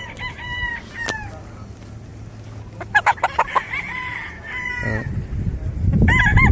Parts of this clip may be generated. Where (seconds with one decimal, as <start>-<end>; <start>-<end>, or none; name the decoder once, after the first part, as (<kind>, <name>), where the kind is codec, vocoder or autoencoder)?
none